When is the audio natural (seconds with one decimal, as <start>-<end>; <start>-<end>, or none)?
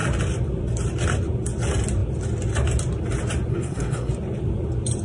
0.0-3.5; 4.1-5.0